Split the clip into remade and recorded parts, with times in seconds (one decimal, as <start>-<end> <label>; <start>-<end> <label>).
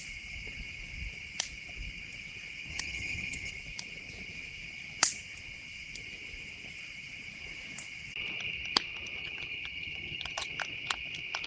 0.0-2.7 recorded; 2.7-3.5 remade; 3.5-9.2 recorded; 9.2-10.5 remade; 10.5-11.5 recorded